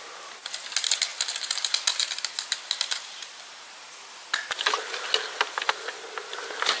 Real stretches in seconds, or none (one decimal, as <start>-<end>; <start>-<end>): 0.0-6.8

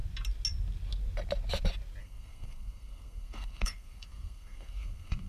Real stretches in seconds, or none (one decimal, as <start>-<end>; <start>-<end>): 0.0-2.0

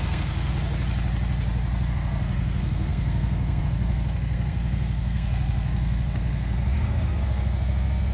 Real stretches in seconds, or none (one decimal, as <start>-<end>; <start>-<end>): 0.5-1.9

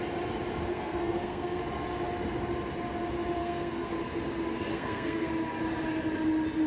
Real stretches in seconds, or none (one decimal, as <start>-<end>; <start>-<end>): 0.0-0.7; 1.6-3.4; 3.9-4.7; 5.3-6.7